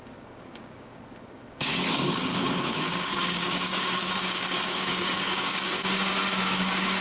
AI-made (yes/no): yes